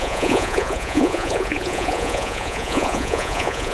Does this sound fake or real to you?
fake